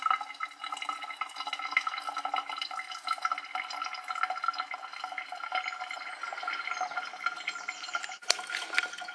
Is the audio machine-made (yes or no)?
no